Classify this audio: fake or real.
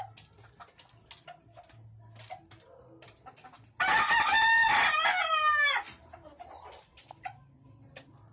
real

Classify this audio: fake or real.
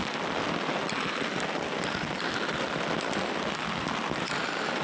real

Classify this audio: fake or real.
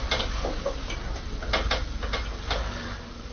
real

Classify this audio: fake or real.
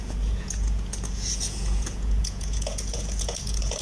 fake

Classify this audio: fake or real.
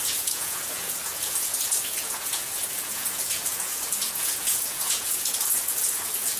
fake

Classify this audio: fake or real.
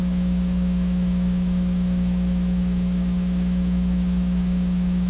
fake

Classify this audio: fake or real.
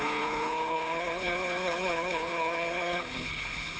fake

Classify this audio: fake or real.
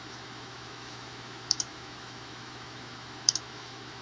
fake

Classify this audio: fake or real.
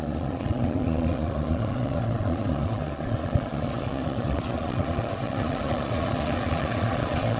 fake